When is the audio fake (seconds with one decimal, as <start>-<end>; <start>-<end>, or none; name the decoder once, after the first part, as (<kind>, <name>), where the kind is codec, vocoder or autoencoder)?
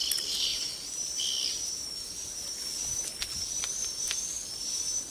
none